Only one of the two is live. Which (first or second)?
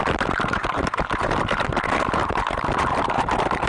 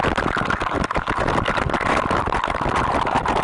second